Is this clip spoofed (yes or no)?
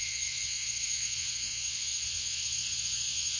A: yes